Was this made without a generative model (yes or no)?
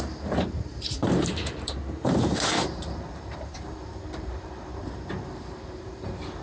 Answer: no